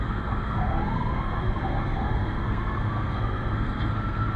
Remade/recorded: remade